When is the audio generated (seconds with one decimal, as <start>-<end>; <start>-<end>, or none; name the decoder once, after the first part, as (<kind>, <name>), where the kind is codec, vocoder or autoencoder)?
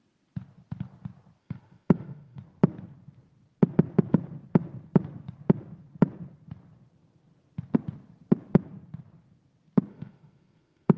1.4-2.4 (autoencoder, DAC-VAE); 9.9-11.0